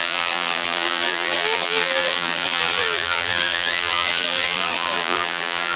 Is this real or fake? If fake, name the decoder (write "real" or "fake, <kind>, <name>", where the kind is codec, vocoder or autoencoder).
fake, vocoder, BigVGAN v2